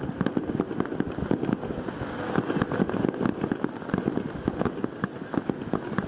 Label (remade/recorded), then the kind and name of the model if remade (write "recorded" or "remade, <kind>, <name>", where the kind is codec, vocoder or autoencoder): recorded